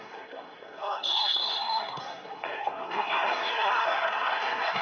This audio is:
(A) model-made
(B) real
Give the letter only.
A